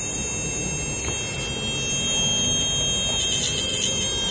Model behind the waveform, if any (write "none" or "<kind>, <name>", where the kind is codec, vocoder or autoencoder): none